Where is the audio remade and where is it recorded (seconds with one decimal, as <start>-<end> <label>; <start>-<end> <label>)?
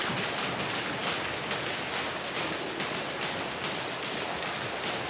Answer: 0.0-5.1 recorded